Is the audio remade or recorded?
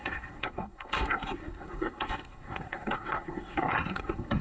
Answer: remade